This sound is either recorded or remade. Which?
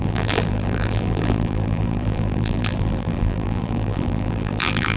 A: remade